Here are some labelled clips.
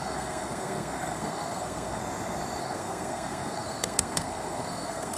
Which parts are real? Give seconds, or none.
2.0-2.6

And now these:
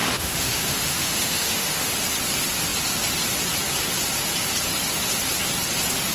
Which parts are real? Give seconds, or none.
1.9-6.1

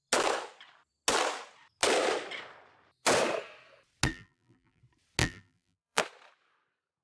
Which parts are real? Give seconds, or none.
0.0-4.1; 4.8-5.2; 6.0-7.0

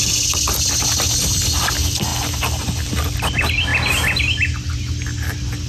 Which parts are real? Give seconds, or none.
0.0-5.7